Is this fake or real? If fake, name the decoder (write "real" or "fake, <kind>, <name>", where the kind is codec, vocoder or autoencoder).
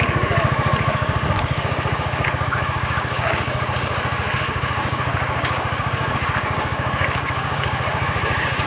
fake, codec, DAC